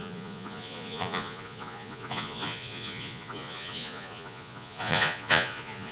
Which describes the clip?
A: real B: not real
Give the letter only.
B